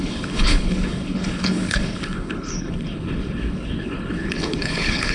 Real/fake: fake